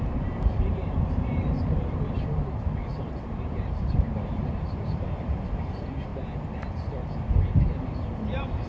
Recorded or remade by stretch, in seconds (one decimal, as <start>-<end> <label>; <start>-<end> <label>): 0.0-6.1 remade; 6.1-8.7 recorded